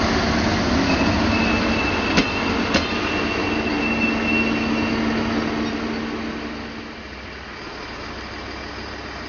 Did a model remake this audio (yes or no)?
no